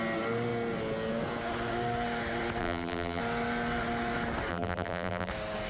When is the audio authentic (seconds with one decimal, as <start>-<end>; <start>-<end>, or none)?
0.0-2.6; 3.2-4.5; 5.3-5.7